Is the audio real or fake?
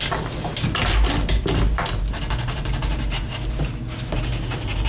real